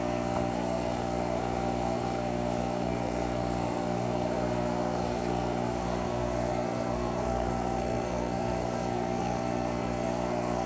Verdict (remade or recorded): remade